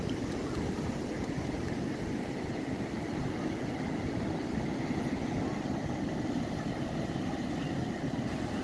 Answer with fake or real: real